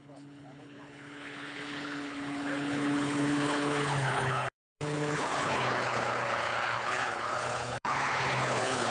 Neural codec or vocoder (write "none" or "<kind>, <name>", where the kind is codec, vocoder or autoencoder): codec, HILCodec